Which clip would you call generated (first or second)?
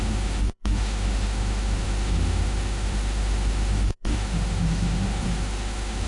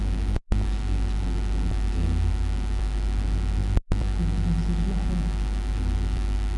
first